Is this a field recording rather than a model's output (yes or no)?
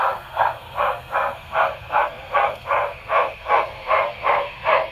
no